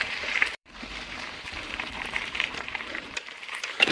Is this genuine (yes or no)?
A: no